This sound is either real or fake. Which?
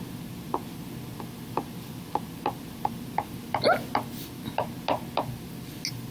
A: real